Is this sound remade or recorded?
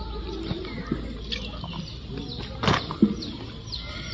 recorded